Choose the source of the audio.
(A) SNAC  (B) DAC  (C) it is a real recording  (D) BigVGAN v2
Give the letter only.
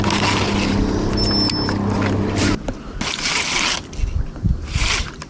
C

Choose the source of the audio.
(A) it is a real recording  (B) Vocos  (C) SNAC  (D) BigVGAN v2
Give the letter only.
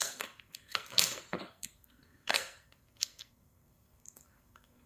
C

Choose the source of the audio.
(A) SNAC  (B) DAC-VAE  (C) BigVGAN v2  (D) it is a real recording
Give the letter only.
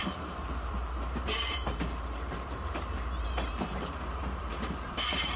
C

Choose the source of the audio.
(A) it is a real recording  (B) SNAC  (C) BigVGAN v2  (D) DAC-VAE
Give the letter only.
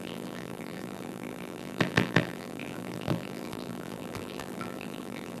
C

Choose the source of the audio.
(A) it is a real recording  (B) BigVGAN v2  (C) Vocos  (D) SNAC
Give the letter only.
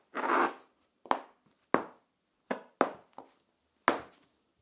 A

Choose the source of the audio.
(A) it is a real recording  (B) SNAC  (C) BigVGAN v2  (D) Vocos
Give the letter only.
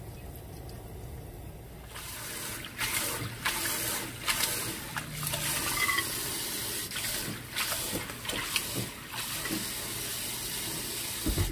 A